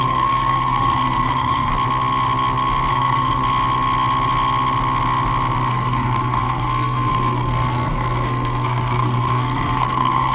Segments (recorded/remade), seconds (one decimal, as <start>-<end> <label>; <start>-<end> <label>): 0.0-1.7 remade; 1.7-2.9 recorded; 2.9-3.4 remade; 3.4-5.7 recorded; 5.7-10.3 remade